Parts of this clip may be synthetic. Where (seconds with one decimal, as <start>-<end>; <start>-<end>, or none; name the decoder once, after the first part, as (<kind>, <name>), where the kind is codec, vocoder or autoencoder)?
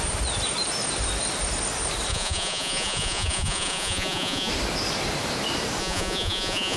2.1-4.5 (vocoder, Vocos); 5.8-6.8